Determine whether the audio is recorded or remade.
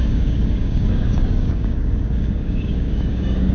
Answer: remade